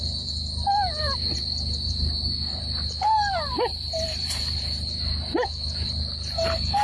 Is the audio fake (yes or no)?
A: yes